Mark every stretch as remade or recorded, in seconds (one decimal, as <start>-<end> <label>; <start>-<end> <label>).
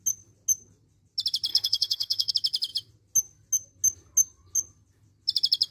0.0-1.5 recorded; 1.5-2.3 remade; 2.3-5.7 recorded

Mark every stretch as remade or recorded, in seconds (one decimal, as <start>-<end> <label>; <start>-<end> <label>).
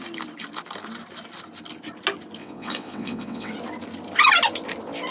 0.0-2.4 recorded; 2.4-3.5 remade; 3.5-5.1 recorded